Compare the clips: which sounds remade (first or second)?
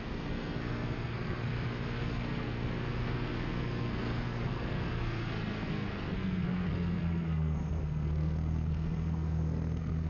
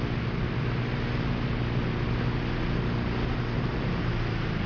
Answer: first